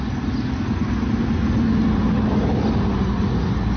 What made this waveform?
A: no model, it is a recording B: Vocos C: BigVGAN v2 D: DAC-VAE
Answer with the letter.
A